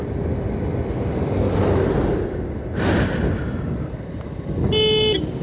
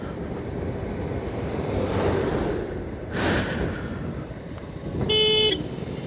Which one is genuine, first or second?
first